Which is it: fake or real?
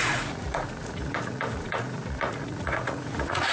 fake